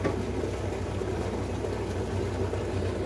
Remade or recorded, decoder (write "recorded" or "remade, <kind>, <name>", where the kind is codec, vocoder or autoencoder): recorded